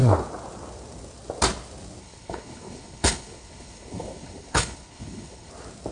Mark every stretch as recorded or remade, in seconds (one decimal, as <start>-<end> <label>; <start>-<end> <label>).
0.0-2.0 recorded; 2.0-5.5 remade; 5.5-5.9 recorded